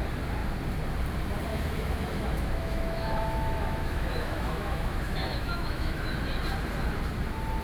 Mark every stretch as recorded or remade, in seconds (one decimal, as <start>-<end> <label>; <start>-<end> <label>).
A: 0.0-1.5 recorded; 1.5-6.1 remade; 6.1-7.6 recorded